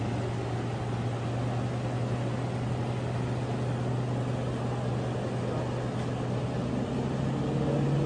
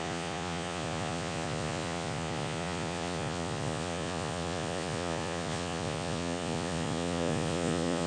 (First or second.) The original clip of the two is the first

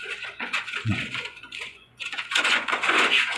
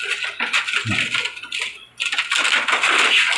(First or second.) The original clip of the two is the second